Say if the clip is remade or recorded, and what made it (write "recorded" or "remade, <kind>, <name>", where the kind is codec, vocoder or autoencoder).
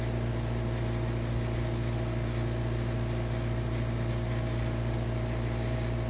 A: recorded